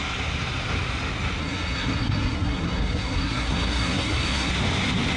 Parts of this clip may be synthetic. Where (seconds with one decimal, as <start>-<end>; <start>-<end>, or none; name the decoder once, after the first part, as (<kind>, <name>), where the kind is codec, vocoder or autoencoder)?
1.4-4.5 (codec, SNAC)